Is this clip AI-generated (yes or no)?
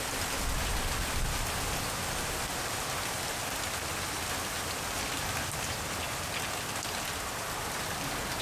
no